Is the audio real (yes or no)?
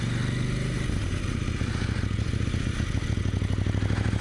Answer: yes